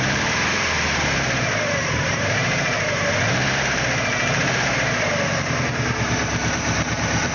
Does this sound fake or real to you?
fake